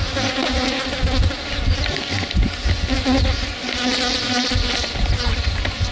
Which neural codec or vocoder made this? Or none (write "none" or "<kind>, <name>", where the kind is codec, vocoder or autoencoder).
none